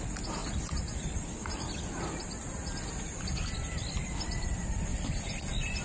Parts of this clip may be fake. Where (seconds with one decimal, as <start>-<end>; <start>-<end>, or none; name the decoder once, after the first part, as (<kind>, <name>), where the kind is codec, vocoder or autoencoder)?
0.4-3.9 (vocoder, BigVGAN v2); 4.9-5.8